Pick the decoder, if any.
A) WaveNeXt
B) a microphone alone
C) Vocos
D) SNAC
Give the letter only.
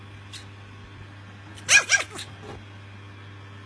B